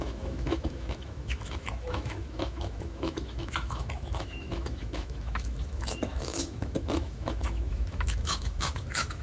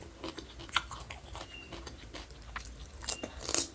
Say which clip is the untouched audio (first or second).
second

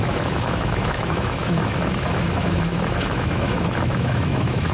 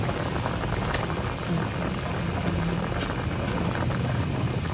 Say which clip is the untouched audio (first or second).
second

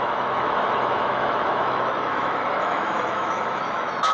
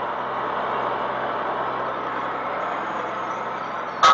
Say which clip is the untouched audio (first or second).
second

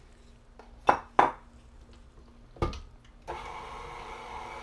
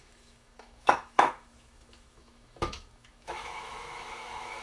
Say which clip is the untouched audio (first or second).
first